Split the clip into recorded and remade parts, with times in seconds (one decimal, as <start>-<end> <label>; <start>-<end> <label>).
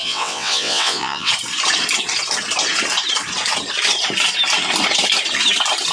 0.0-1.3 remade; 1.3-5.9 recorded